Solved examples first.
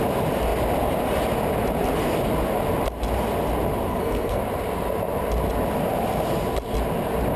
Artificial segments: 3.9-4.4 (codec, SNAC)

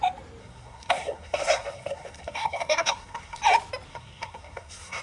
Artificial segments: 0.4-3.4 (codec, SNAC); 3.9-5.0

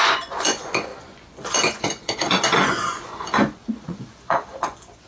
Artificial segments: 0.0-5.1 (vocoder, Vocos)